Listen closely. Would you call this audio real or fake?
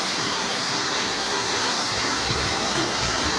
fake